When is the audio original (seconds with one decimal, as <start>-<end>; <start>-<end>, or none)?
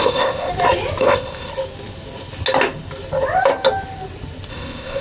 0.5-1.0; 1.5-4.5